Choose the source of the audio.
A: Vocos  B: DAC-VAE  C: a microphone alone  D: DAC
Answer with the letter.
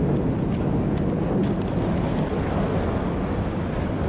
C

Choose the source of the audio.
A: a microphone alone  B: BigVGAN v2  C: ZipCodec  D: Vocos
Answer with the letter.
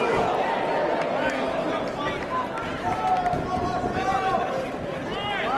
A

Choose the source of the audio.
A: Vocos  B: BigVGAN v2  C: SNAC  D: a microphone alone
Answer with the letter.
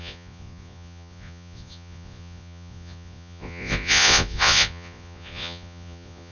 A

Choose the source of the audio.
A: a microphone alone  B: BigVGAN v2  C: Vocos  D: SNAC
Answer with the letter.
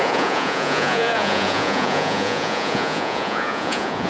C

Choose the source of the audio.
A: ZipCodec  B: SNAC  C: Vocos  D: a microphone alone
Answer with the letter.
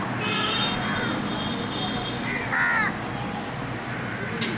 D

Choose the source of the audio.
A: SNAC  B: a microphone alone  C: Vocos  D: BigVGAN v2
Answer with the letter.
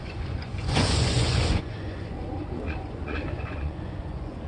C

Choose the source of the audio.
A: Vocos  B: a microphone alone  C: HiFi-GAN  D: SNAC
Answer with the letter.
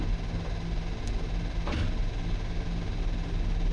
B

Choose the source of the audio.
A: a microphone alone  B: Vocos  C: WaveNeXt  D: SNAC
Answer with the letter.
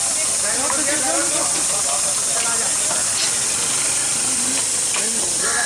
A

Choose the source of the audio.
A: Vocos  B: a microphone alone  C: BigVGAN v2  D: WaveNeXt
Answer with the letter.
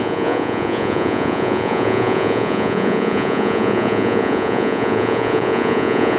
A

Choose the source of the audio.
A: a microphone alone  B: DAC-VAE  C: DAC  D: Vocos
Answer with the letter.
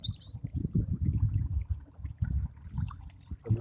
A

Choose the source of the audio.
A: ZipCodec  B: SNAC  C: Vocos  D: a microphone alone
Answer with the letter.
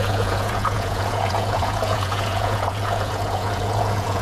C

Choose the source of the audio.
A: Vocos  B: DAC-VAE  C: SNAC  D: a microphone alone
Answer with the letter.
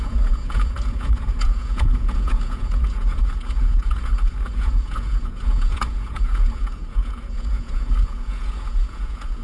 A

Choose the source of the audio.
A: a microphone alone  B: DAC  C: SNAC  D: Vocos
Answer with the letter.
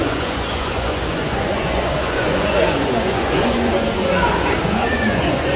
D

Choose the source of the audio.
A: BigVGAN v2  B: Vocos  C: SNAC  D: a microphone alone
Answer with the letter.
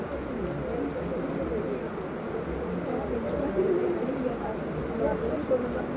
D